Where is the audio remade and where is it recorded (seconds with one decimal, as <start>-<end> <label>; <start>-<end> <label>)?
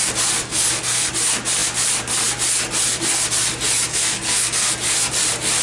0.0-0.5 recorded; 0.5-1.1 remade; 1.1-3.9 recorded; 3.9-4.7 remade; 4.7-5.6 recorded